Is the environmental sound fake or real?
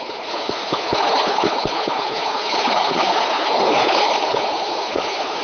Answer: fake